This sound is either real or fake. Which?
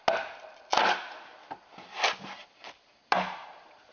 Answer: real